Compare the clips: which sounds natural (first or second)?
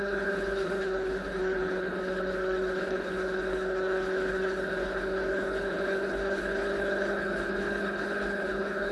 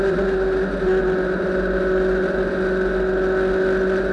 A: second